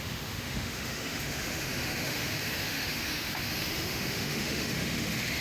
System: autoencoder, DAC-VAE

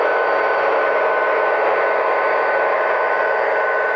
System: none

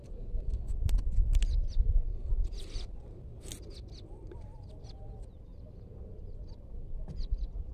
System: none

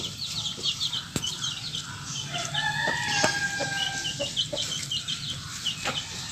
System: none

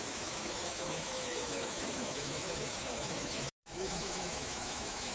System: autoencoder, DAC-VAE